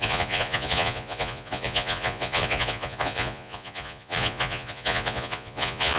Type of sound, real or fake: fake